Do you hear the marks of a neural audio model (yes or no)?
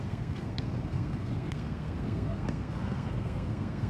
yes